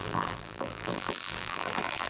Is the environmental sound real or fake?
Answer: fake